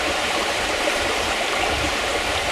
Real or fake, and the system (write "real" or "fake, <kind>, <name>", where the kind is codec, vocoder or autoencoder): fake, vocoder, BigVGAN v2